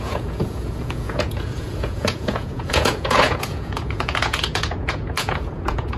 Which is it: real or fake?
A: fake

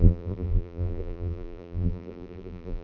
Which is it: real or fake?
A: fake